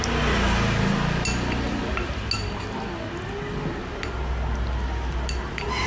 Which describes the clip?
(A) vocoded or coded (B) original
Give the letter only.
B